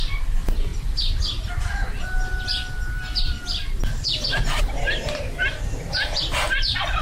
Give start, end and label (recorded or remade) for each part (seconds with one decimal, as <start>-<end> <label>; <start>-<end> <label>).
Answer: 0.0-7.0 recorded